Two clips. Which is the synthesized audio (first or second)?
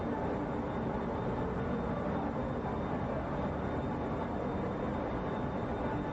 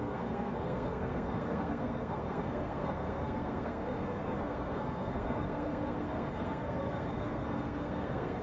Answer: second